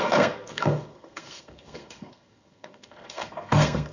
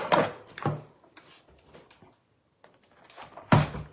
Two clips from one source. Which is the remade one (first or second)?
first